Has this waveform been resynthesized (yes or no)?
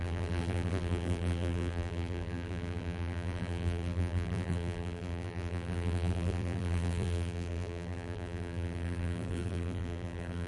yes